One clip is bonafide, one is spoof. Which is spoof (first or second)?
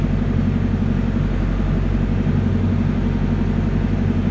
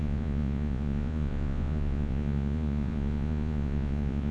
second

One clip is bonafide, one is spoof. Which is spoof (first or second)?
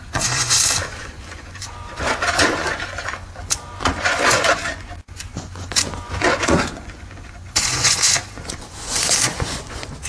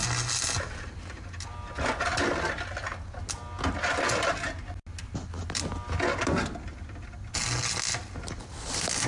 first